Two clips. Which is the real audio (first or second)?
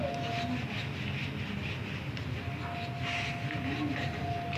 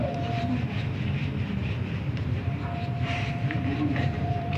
first